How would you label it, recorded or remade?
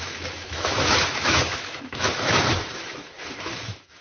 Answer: remade